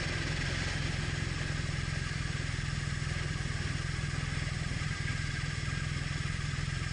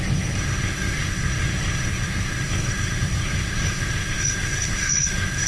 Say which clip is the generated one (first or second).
second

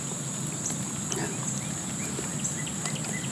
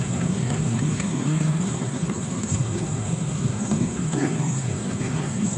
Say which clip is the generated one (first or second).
second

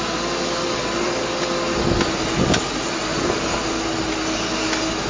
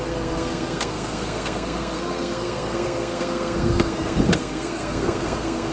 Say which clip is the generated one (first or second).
second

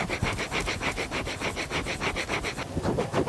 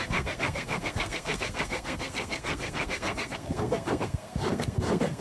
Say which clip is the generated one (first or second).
second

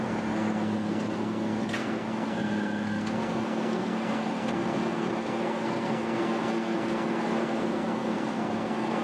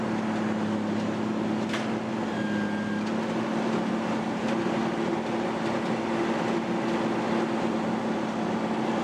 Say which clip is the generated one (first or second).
first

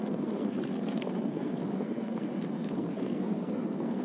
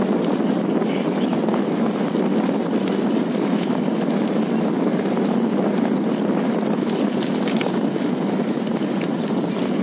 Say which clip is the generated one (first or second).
first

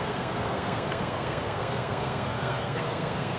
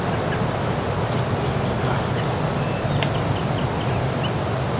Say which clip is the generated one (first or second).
first